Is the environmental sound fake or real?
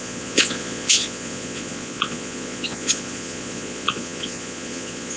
fake